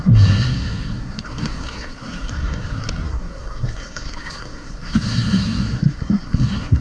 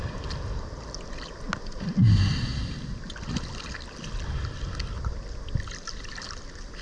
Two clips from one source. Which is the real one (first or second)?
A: second